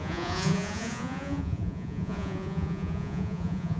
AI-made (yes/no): yes